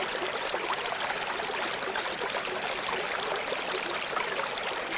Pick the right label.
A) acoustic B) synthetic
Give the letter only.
A